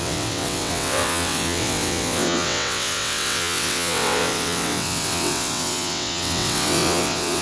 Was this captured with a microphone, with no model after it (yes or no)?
no